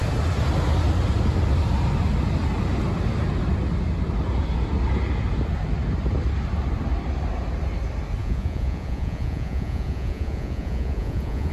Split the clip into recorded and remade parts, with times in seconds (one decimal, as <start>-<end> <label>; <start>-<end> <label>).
0.0-8.2 recorded; 8.2-11.5 remade